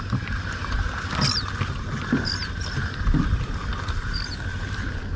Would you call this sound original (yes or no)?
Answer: yes